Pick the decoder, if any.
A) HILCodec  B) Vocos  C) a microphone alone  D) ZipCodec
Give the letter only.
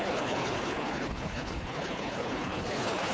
A